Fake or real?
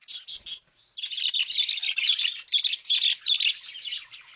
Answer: real